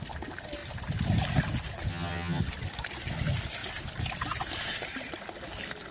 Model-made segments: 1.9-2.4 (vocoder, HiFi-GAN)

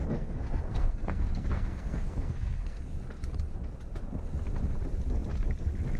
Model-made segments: 0.0-2.8 (codec, SNAC)

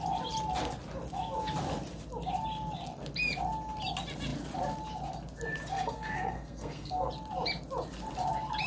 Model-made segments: 5.7-7.1 (codec, SNAC)

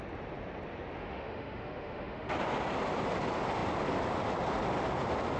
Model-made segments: 1.0-2.3 (autoencoder, DAC-VAE)

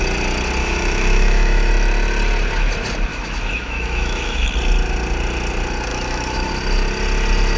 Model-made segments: 0.6-1.7 (autoencoder, DAC-VAE); 3.1-4.5; 5.9-6.5